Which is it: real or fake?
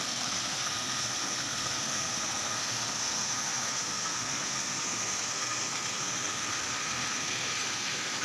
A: fake